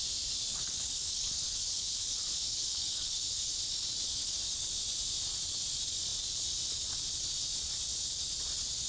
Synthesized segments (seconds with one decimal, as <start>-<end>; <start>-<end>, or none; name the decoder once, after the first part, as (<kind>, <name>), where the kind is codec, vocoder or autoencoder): 0.5-3.5 (codec, HILCodec); 4.2-4.7